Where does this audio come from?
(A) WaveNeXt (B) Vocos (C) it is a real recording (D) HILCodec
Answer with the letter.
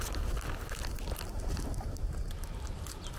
C